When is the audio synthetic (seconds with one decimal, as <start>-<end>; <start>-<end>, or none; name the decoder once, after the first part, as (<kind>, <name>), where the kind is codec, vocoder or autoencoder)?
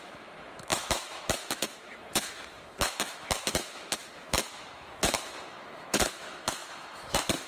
0.0-7.5 (autoencoder, DAC-VAE)